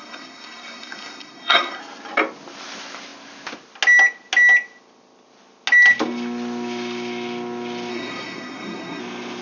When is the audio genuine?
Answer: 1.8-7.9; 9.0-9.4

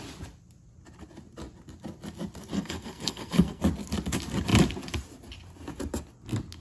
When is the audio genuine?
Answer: 0.0-2.5; 3.6-6.6